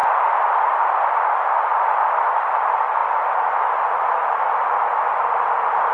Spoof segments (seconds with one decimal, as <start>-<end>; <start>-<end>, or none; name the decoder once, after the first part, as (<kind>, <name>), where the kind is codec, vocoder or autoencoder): 0.0-1.5 (vocoder, BigVGAN v2)